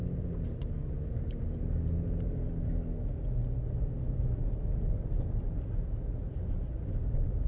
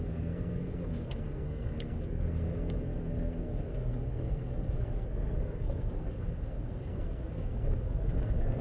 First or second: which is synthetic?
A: second